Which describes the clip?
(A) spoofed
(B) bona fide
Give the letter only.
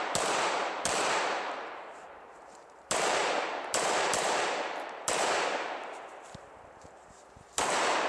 A